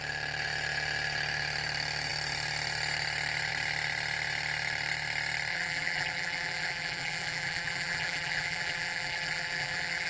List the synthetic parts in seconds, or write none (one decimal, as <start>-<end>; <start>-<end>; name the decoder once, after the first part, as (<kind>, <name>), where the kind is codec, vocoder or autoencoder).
5.5-10.1 (vocoder, BigVGAN v2)